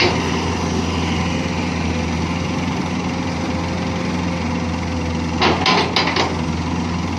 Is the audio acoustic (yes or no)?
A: yes